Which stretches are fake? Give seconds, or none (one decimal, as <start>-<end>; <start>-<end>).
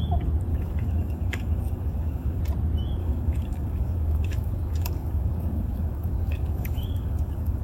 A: 0.5-2.4; 3.0-7.6